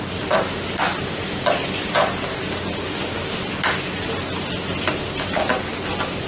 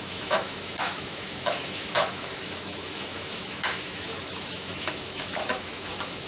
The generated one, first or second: second